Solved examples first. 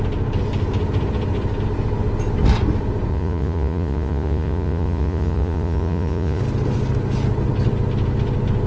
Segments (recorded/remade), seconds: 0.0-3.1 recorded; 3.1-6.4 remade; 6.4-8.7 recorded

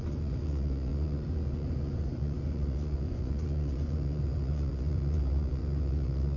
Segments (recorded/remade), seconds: 0.0-6.4 remade

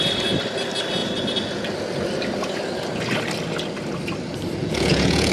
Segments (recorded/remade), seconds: 0.0-4.6 recorded; 4.6-5.3 remade

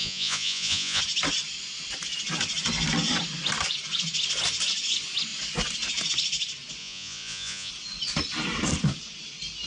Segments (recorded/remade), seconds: 0.0-1.0 remade; 1.0-6.8 recorded; 6.8-7.7 remade; 7.7-9.7 recorded

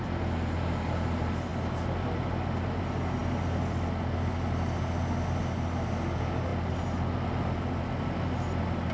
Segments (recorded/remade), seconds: 0.0-8.9 recorded

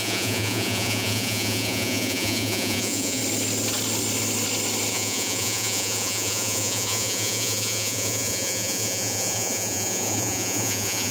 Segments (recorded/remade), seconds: 0.0-3.2 remade; 3.2-4.9 recorded; 4.9-11.1 remade

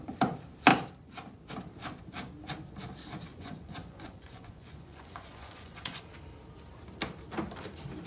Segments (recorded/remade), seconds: 0.0-3.3 recorded; 3.3-6.0 remade; 6.0-8.1 recorded

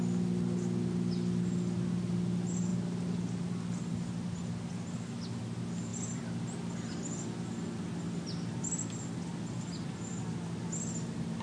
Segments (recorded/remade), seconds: 0.0-11.4 recorded